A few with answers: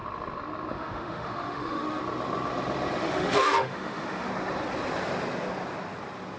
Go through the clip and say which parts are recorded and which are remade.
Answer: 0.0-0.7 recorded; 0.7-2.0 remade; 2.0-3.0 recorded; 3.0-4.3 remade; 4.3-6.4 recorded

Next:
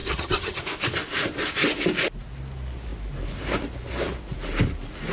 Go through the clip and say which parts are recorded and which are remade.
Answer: 0.0-0.6 remade; 0.6-5.1 recorded